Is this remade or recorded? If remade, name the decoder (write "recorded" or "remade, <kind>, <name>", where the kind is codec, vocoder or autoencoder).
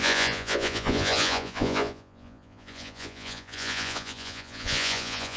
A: remade, vocoder, Vocos